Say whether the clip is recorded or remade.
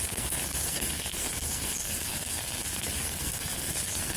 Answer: remade